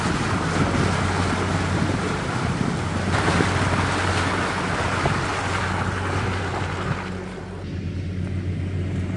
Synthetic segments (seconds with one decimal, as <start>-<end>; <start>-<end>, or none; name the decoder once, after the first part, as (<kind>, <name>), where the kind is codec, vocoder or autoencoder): none